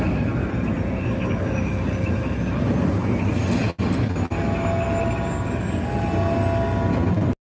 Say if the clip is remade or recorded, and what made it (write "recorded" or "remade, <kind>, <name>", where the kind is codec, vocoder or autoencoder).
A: recorded